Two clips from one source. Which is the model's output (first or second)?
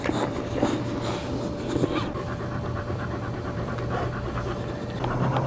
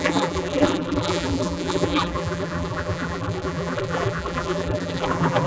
second